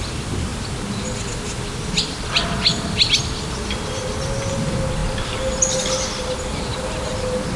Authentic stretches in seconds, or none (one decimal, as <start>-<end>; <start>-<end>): 0.0-7.6

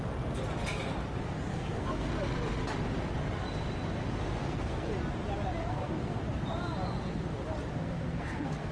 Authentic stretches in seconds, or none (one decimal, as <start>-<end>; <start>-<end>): 0.0-1.5; 2.1-4.4; 4.9-5.6; 6.2-7.8